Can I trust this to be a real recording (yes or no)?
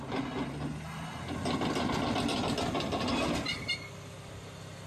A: yes